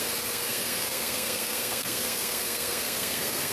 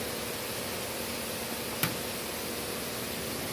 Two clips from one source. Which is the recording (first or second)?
second